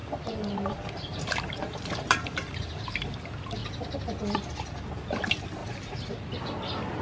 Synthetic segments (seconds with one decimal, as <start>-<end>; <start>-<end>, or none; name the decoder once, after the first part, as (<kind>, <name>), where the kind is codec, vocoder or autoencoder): 0.0-3.1 (vocoder, BigVGAN v2)